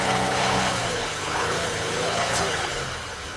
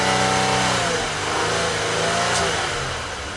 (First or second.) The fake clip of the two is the first